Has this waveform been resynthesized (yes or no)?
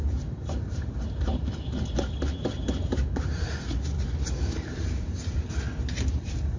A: yes